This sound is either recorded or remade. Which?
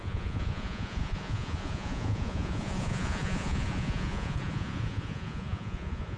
remade